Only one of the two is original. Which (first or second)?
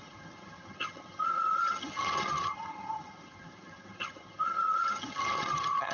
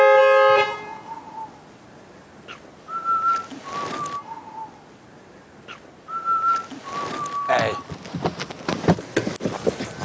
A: second